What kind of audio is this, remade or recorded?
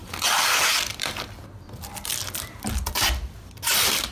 remade